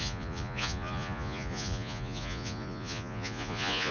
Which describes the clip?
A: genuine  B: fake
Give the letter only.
B